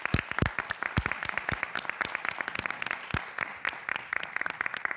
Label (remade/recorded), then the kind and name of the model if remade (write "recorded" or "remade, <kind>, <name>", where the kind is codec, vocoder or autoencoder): recorded